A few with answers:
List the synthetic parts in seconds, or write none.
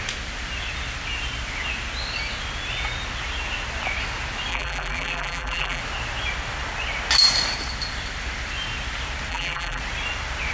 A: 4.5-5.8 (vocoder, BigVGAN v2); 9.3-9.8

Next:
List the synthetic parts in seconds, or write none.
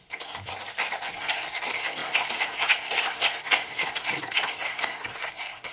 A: 0.0-0.5 (codec, SNAC); 1.1-5.7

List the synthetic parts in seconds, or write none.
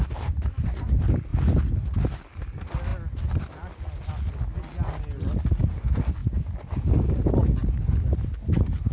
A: none